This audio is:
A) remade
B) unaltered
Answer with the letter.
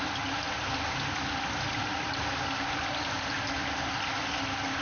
B